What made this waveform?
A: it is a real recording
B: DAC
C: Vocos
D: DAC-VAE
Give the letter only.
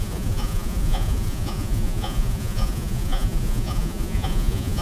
C